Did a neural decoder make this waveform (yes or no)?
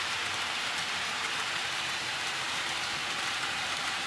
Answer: yes